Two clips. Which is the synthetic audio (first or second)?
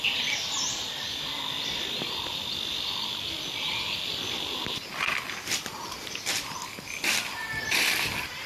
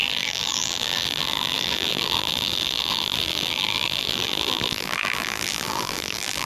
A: second